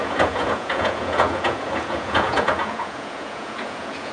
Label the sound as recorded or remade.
remade